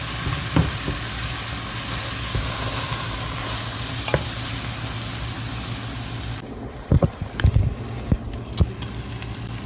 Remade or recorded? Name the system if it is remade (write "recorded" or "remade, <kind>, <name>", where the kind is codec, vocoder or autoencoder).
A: recorded